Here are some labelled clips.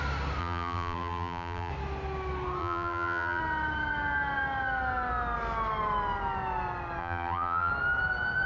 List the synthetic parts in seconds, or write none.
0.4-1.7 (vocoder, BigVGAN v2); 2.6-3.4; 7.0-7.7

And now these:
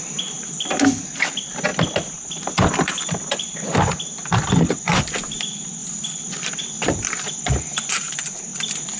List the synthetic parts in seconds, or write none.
0.0-1.7 (vocoder, BigVGAN v2); 2.3-9.0